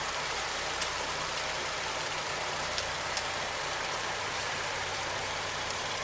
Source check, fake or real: fake